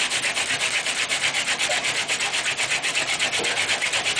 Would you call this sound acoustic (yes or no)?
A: yes